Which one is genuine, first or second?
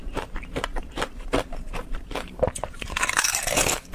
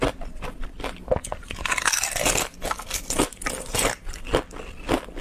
second